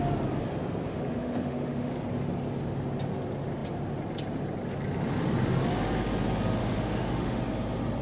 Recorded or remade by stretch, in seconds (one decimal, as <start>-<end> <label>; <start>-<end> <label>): 0.0-0.9 recorded; 0.9-1.9 remade; 1.9-6.6 recorded; 6.6-7.4 remade; 7.4-8.0 recorded